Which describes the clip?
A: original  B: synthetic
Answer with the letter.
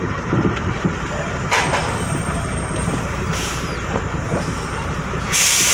B